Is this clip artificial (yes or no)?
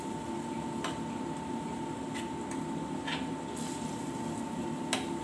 no